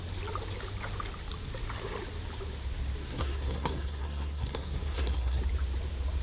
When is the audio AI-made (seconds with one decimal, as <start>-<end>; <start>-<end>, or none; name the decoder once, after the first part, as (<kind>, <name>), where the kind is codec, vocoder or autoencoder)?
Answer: 3.0-5.4 (codec, SNAC)